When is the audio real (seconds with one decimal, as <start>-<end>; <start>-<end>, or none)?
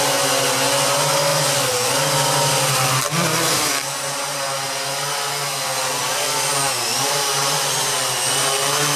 4.3-6.1